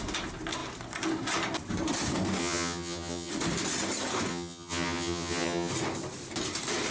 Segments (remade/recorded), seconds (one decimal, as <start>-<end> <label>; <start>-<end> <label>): 0.0-2.4 recorded; 2.4-3.3 remade; 3.3-4.3 recorded; 4.3-5.7 remade; 5.7-6.9 recorded